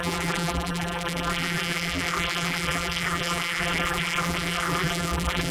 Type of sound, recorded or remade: remade